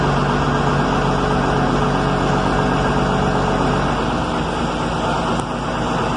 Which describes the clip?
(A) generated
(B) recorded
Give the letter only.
B